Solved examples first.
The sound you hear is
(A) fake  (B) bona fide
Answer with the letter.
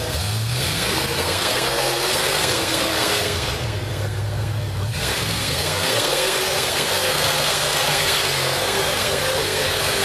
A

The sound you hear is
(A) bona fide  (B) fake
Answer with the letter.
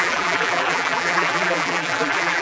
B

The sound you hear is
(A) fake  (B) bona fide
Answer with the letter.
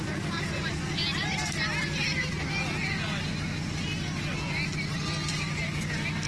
B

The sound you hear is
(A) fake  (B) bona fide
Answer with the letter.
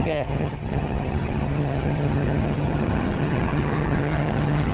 A